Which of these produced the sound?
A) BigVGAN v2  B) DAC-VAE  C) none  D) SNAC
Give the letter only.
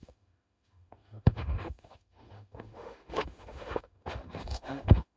B